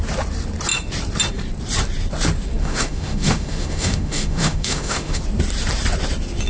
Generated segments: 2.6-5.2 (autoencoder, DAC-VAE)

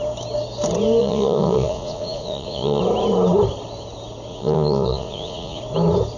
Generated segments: 1.0-2.8 (vocoder, Vocos); 4.3-5.6

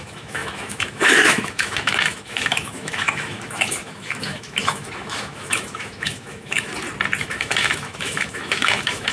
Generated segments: 0.0-6.7 (autoencoder, DAC-VAE); 7.2-9.1

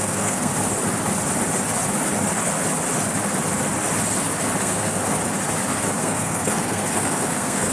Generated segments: 0.0-0.5 (codec, SNAC); 4.6-5.0; 6.0-7.7

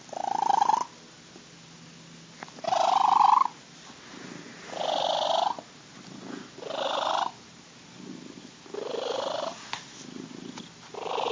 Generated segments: none

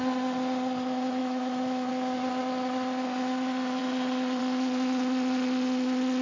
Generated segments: 1.2-1.9 (autoencoder, DAC-VAE)